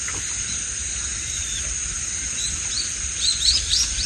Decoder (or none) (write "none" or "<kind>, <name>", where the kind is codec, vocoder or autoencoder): none